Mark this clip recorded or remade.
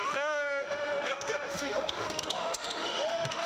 remade